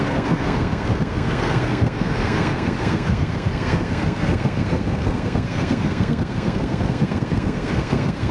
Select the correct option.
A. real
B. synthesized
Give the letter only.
B